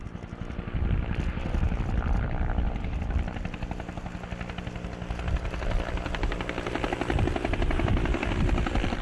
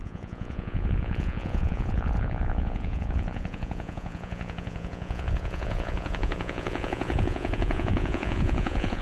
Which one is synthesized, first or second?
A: second